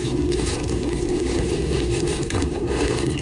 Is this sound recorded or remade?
remade